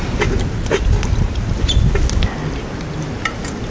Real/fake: real